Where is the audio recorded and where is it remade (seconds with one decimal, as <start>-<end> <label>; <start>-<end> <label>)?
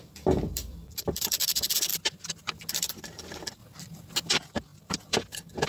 0.0-1.9 remade; 1.9-2.7 recorded; 2.7-3.6 remade; 3.6-4.3 recorded; 4.3-5.7 remade